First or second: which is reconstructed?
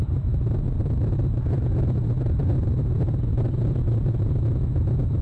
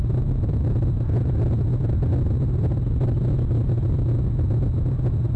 first